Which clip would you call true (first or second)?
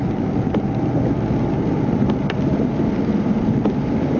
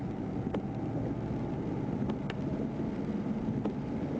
second